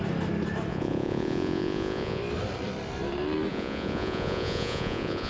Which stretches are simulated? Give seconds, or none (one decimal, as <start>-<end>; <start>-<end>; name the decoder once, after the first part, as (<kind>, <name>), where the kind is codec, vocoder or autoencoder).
0.7-2.2 (vocoder, Vocos); 3.5-5.3